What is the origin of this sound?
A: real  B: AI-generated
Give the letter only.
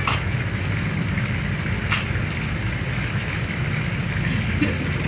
A